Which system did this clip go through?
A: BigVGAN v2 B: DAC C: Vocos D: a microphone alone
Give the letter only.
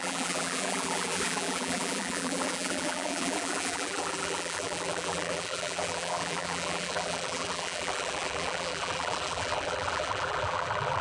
A